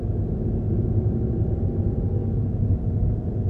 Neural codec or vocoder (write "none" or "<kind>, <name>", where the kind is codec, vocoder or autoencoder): none